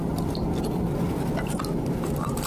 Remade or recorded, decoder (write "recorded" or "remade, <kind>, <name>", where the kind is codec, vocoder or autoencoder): recorded